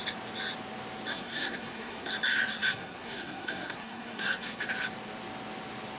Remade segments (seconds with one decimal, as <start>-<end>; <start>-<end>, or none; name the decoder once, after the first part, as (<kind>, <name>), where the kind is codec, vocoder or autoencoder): 1.1-2.1 (codec, SNAC); 2.5-4.7